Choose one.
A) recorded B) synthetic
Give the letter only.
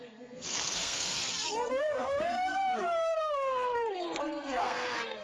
B